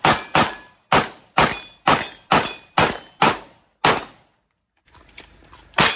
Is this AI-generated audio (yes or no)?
no